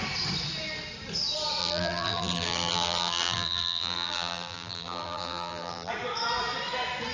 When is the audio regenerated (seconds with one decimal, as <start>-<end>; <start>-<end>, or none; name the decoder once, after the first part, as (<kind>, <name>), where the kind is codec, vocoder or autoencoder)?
1.6-5.9 (vocoder, BigVGAN v2)